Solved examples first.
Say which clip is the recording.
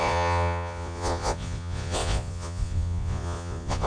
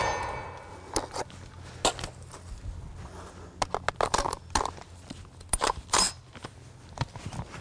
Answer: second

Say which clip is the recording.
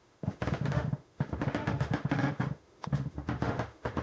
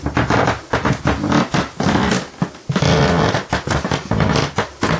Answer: second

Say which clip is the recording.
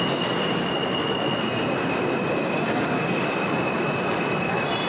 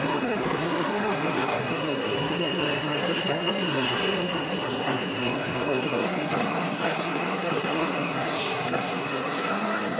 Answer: first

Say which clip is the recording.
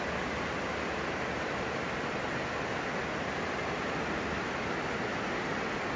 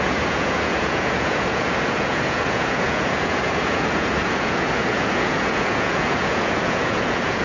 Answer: first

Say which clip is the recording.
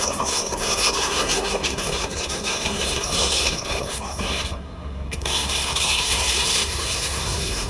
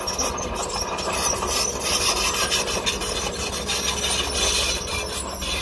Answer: second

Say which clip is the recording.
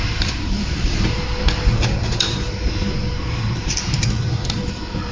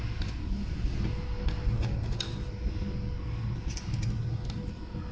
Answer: second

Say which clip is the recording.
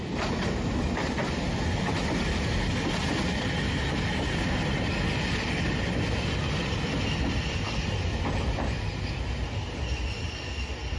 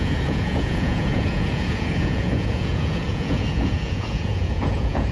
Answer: first